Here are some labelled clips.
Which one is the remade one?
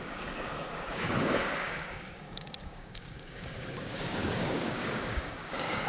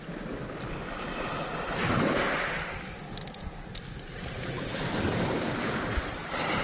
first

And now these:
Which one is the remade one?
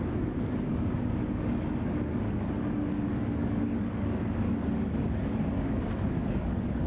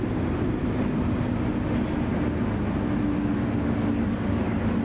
first